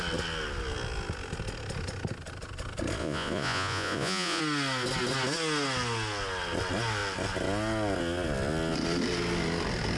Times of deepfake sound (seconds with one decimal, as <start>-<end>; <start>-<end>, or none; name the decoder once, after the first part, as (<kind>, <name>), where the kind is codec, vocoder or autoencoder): 3.0-4.4 (vocoder, Vocos)